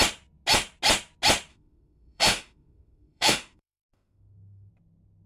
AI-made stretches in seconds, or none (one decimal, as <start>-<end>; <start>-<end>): 1.5-4.7